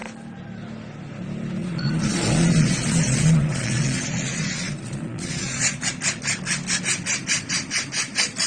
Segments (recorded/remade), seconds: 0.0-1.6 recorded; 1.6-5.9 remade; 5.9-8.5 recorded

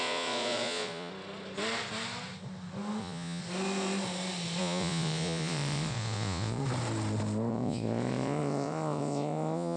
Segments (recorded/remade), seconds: 0.0-1.1 remade; 1.1-3.0 recorded; 3.0-3.4 remade; 3.4-4.6 recorded; 4.6-6.6 remade; 6.6-7.5 recorded; 7.5-9.8 remade